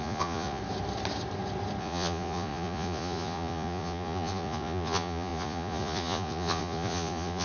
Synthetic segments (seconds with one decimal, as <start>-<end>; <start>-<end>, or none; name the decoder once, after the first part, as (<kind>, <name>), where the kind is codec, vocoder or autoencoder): 0.0-0.6 (vocoder, Vocos); 1.8-7.4